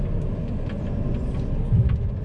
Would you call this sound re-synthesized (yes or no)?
no